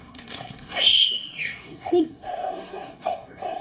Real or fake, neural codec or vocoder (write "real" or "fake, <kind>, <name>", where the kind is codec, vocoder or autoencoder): fake, codec, SNAC